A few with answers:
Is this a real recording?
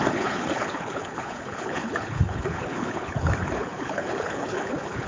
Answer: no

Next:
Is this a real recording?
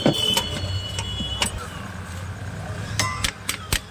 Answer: yes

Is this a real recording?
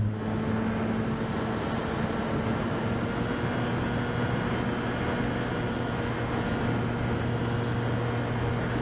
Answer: yes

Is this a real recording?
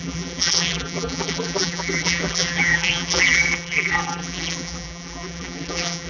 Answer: no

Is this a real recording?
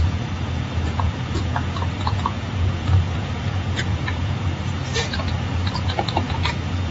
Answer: no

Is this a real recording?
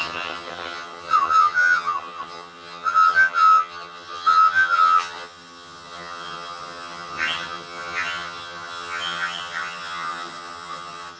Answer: no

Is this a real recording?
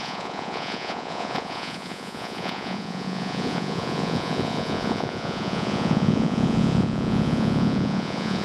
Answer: no